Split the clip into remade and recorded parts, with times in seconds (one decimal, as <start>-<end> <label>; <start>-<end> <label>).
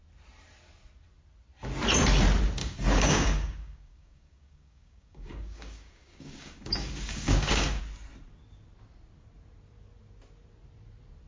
0.0-2.6 recorded; 2.6-7.8 remade; 7.8-11.3 recorded